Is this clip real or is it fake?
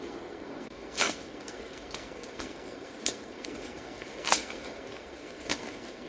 fake